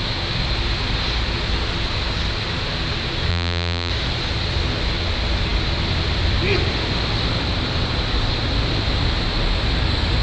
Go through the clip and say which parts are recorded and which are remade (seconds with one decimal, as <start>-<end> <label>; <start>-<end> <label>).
0.0-3.3 recorded; 3.3-3.9 remade; 3.9-10.2 recorded